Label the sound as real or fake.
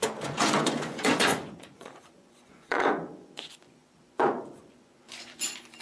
fake